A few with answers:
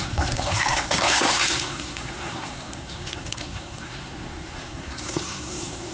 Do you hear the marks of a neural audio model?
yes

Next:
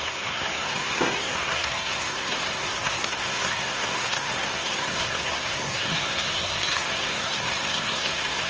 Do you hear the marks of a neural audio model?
yes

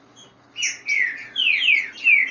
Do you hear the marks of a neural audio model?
no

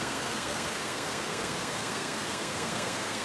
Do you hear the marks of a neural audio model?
yes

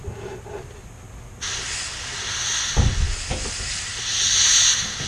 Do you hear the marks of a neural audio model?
no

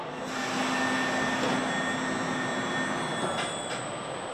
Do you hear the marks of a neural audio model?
no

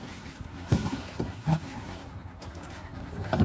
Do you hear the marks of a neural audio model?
yes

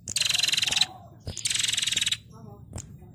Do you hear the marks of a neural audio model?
no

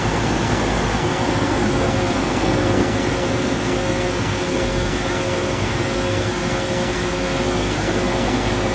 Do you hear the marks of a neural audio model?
yes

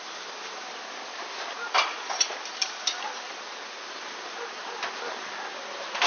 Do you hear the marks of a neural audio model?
no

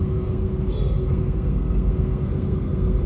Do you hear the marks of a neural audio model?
yes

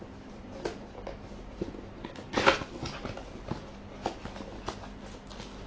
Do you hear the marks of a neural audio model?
no